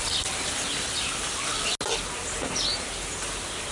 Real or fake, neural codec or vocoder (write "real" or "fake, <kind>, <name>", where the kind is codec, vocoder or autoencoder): real